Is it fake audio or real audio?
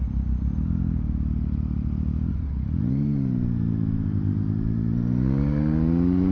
real